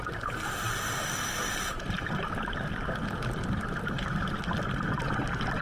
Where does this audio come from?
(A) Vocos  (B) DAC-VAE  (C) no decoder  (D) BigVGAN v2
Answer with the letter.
C